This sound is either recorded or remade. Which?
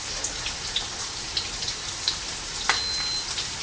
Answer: recorded